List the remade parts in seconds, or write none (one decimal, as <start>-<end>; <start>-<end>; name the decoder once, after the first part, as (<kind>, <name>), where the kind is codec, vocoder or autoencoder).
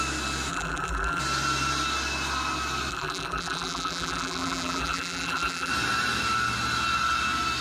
0.5-1.2 (vocoder, BigVGAN v2); 2.9-5.7